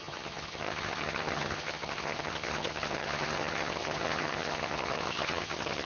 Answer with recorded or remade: remade